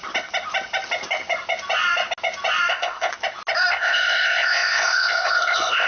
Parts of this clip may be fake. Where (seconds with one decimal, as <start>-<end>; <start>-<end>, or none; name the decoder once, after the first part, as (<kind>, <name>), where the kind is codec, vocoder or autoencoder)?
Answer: 2.7-3.1 (codec, ZipCodec); 3.7-5.9